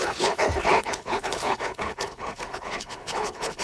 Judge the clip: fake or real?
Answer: fake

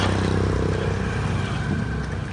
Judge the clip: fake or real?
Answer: real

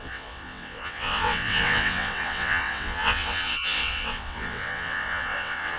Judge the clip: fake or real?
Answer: fake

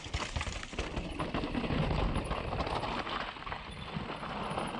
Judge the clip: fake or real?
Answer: real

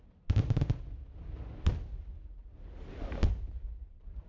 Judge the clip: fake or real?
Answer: real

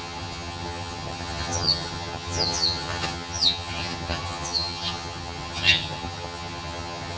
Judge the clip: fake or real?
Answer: fake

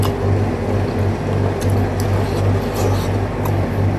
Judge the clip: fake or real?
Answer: real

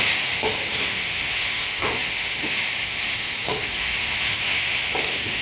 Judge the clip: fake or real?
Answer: fake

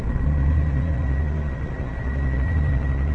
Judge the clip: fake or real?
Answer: fake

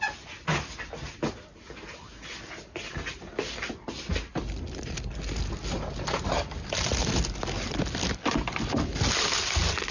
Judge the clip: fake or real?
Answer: real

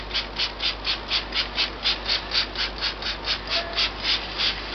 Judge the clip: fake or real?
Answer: real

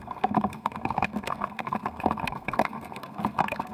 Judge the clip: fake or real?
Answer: fake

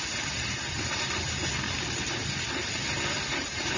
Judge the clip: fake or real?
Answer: real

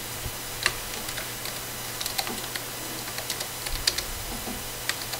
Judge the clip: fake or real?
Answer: real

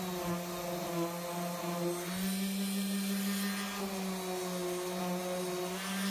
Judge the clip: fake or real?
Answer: real